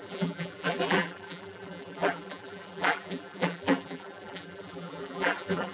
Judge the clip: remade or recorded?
remade